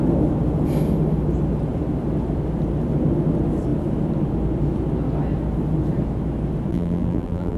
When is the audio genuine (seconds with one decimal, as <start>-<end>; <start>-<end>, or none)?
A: 0.0-6.7